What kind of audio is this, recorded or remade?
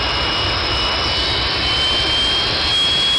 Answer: recorded